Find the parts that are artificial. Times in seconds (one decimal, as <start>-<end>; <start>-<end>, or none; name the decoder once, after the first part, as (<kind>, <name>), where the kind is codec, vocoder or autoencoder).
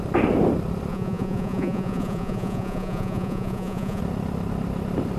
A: 0.9-4.0 (vocoder, Vocos)